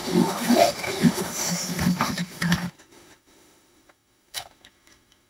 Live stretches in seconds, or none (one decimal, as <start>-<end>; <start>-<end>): none

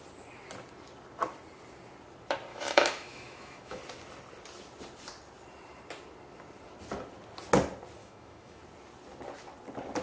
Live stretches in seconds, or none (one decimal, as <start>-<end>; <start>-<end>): 0.0-2.5; 3.8-8.0; 8.6-10.0